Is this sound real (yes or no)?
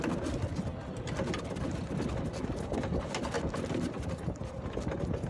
yes